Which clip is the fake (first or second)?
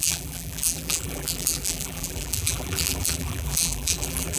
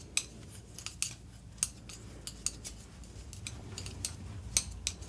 first